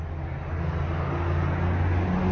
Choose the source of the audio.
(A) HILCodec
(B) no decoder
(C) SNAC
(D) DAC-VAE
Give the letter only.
B